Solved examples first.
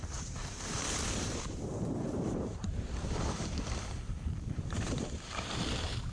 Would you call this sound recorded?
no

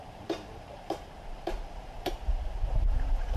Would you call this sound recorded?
no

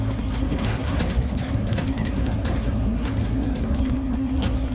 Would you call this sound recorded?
no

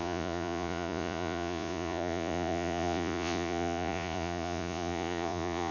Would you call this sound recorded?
no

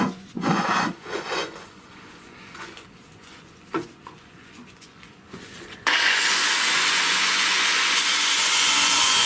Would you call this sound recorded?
no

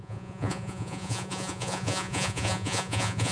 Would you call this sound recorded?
no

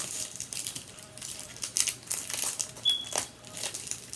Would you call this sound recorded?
no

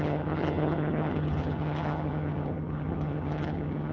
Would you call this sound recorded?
no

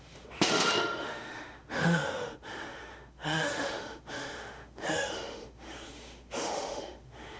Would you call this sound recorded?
no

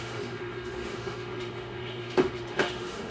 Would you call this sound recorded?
no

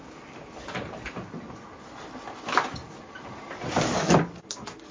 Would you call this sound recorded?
yes